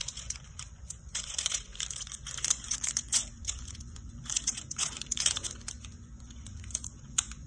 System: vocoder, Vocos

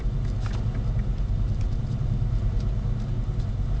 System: none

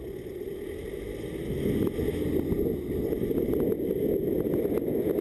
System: none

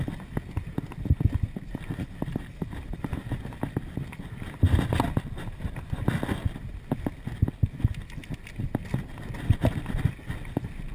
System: none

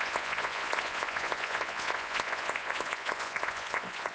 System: vocoder, Vocos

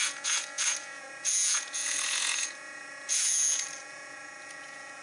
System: vocoder, Vocos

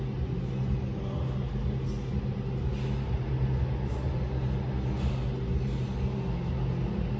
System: none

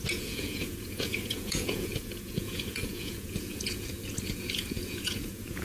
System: vocoder, Vocos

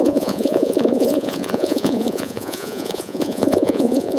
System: vocoder, Vocos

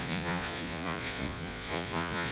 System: vocoder, Vocos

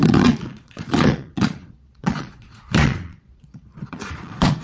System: vocoder, Vocos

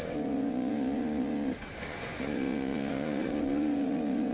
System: vocoder, Vocos